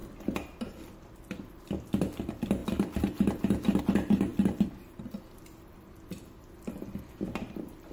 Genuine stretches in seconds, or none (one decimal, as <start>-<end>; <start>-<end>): 0.0-0.6; 2.6-3.8